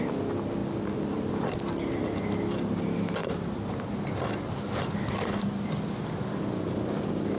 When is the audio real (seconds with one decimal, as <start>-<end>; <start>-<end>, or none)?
0.0-7.4